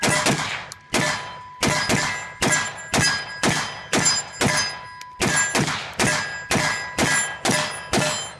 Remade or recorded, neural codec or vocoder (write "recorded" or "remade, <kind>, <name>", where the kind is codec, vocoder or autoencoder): recorded